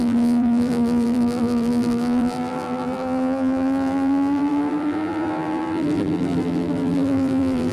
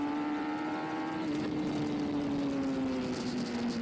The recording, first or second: second